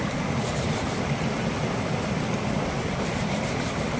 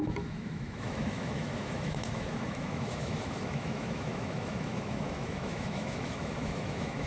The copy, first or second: second